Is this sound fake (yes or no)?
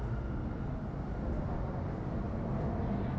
no